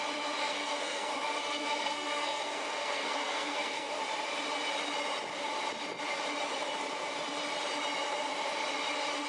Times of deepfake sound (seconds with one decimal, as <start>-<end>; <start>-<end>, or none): 0.4-4.0